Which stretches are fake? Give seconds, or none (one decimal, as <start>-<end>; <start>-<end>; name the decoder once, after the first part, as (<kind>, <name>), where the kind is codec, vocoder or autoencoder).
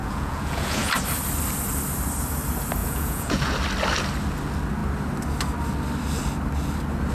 0.0-0.9 (vocoder, Vocos); 2.8-3.6